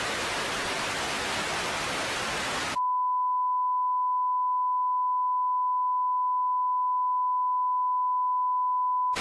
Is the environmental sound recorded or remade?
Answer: recorded